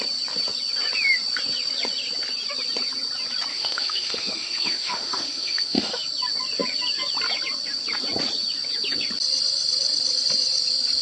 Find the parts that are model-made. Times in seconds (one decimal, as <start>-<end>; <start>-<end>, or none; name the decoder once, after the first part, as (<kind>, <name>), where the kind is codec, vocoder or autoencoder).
3.5-6.0 (autoencoder, DAC-VAE)

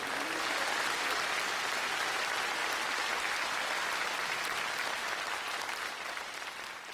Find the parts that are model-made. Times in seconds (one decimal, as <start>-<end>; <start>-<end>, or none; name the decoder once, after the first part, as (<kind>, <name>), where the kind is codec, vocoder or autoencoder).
none

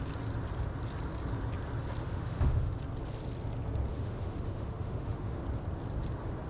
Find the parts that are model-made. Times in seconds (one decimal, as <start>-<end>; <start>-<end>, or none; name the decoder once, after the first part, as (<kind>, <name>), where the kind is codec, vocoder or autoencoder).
2.0-2.8 (autoencoder, DAC-VAE); 3.9-5.4

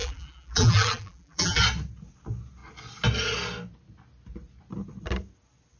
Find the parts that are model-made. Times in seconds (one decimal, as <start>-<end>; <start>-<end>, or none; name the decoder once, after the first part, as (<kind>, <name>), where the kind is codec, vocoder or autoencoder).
0.0-1.6 (vocoder, BigVGAN v2)